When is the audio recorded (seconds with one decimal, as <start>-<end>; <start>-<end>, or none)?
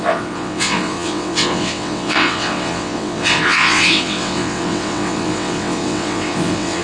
none